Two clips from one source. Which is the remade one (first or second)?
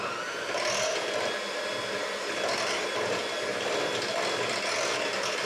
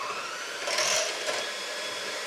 second